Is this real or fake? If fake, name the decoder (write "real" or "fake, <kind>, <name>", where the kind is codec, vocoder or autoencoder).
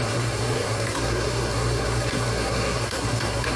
fake, codec, SNAC